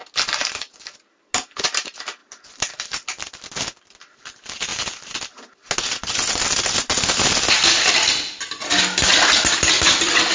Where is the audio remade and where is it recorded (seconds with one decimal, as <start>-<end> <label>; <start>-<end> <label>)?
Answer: 0.0-10.3 recorded